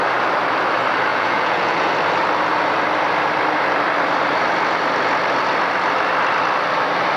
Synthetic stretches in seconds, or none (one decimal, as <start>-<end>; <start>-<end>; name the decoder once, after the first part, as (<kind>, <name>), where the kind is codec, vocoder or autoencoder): 1.1-1.9 (vocoder, Vocos)